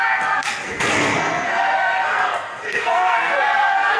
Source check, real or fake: fake